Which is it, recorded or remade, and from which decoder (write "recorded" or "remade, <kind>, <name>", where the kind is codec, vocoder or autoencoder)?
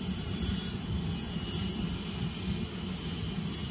recorded